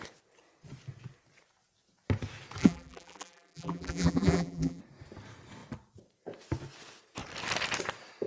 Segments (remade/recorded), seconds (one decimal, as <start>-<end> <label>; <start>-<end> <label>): 0.0-2.6 recorded; 2.6-4.8 remade; 4.8-8.3 recorded